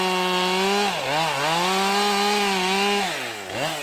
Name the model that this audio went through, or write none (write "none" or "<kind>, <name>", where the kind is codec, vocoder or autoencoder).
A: none